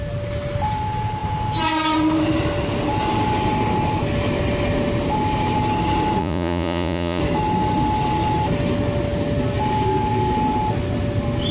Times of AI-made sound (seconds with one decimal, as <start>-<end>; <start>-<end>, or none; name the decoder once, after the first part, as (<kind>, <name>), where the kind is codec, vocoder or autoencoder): 6.2-7.2 (vocoder, Vocos)